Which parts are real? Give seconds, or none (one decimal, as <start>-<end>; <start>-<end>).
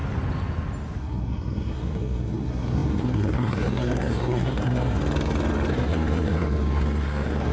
0.0-1.0; 5.0-5.7